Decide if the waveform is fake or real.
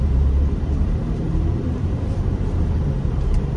fake